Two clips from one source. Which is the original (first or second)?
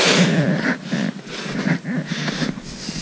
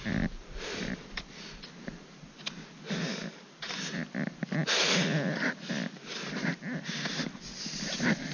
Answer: second